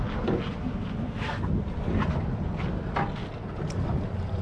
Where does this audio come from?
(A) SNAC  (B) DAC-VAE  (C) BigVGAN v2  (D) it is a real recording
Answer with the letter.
D